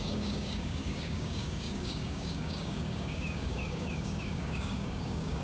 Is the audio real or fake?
fake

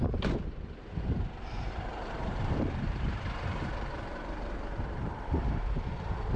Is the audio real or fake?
fake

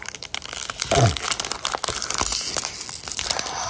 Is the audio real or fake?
real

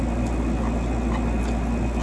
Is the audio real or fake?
real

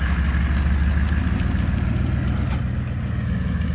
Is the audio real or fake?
real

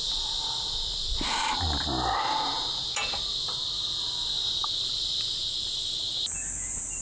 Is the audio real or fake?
real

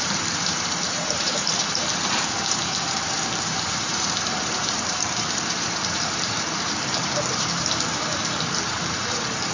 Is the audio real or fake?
fake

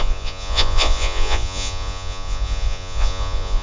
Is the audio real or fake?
fake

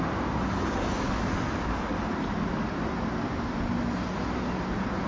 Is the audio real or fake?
real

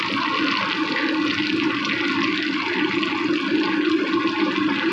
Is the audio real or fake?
real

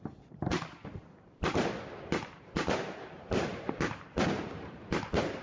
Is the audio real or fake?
fake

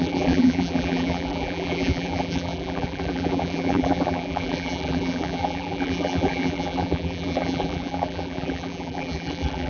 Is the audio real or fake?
fake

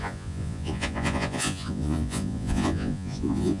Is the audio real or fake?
fake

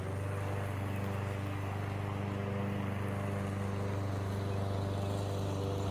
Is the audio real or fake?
real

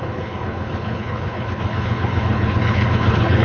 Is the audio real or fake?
fake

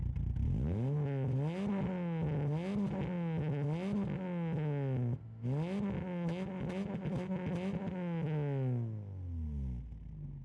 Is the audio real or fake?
real